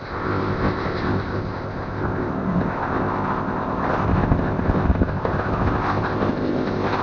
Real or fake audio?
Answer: fake